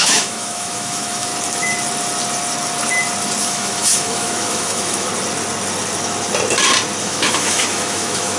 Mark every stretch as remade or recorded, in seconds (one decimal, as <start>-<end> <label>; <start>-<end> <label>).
0.0-1.3 remade; 1.3-3.4 recorded; 3.4-5.1 remade; 5.1-7.0 recorded; 7.0-8.4 remade